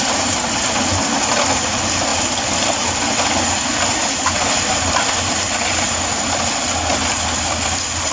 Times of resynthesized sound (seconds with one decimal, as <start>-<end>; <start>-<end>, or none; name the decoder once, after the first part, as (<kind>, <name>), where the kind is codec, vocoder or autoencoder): none

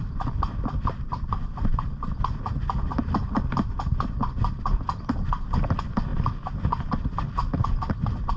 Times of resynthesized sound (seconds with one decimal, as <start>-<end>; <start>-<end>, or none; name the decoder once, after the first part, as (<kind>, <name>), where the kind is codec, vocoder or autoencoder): none

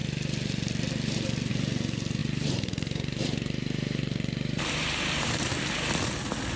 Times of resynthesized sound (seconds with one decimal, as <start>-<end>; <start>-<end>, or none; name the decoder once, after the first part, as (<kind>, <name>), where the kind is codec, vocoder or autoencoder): 2.2-5.6 (vocoder, BigVGAN v2)

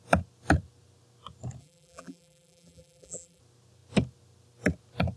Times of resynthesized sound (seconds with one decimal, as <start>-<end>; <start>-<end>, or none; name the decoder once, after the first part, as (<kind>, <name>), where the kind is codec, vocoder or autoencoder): 1.6-3.4 (vocoder, BigVGAN v2)

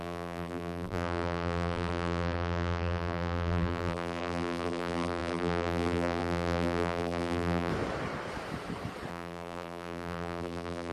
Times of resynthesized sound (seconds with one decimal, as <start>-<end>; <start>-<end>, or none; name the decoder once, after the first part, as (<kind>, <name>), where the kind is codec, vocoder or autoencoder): 0.0-7.7 (vocoder, BigVGAN v2); 9.1-10.9